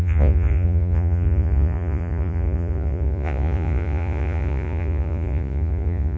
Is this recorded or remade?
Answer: remade